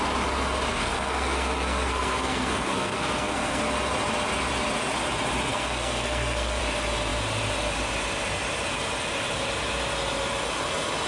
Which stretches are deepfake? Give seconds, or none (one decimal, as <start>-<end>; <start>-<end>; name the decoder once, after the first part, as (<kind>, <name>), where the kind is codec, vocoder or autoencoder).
0.7-3.6 (codec, SNAC); 5.5-6.6

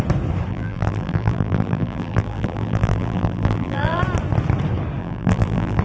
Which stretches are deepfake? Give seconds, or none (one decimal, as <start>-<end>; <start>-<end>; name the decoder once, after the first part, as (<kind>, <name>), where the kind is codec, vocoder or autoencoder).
0.5-4.0 (vocoder, BigVGAN v2); 5.0-5.8

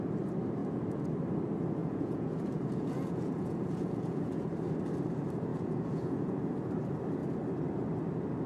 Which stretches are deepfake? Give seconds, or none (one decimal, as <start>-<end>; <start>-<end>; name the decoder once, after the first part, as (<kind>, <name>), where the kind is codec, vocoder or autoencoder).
0.6-1.1 (vocoder, Vocos); 1.8-4.5; 5.5-6.7

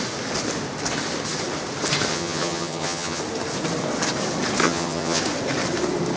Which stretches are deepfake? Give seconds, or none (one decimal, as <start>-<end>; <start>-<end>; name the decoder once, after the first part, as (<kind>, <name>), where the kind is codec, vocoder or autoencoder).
2.1-3.2 (vocoder, HiFi-GAN); 4.6-5.2

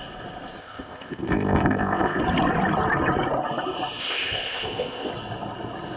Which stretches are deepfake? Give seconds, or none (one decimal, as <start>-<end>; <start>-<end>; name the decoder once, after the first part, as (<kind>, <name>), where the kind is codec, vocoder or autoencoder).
0.6-2.2 (codec, ZipCodec); 4.0-5.1

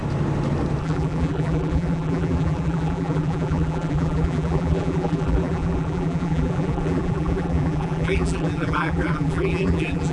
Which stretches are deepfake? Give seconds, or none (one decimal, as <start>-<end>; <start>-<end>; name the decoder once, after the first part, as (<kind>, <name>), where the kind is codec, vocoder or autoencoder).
0.8-10.1 (vocoder, BigVGAN v2)

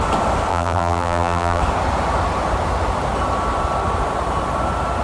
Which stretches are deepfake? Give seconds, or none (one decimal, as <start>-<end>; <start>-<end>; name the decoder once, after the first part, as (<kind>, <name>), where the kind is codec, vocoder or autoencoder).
0.5-1.6 (vocoder, BigVGAN v2)

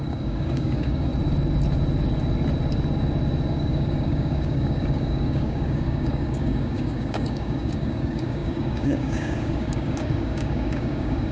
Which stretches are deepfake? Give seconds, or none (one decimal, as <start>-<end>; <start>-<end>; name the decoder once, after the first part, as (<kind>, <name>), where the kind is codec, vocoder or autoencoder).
0.0-1.1 (codec, DAC); 3.5-11.3